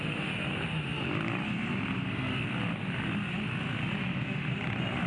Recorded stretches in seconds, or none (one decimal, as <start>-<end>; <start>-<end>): 0.0-5.1